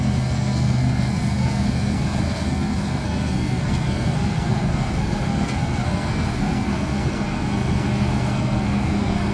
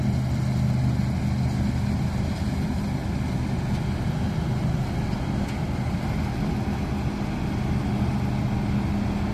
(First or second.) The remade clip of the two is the first